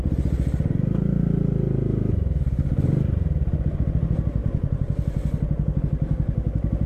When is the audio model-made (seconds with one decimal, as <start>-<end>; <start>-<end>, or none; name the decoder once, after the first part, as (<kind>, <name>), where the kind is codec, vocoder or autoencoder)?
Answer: none